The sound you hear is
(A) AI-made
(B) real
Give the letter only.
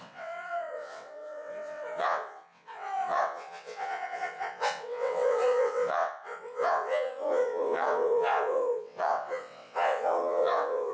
A